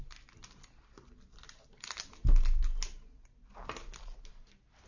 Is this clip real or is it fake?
real